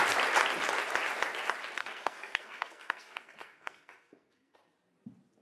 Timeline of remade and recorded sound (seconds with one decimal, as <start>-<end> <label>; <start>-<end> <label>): 0.0-1.8 recorded; 1.8-4.6 remade; 4.6-5.4 recorded